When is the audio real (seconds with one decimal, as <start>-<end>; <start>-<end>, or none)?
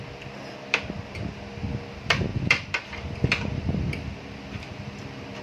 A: 0.0-2.3